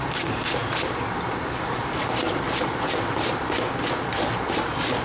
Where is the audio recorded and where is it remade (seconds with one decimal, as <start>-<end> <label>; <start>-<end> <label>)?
0.0-5.0 remade